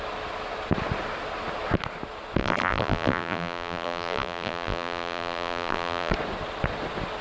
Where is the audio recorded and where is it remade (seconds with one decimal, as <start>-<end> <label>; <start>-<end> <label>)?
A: 0.0-2.4 recorded; 2.4-6.1 remade; 6.1-7.2 recorded